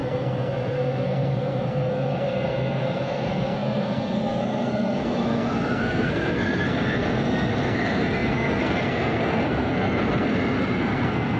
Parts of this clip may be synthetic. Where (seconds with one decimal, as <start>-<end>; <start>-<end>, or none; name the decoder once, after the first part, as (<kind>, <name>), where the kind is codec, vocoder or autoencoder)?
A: 0.0-11.4 (codec, SNAC)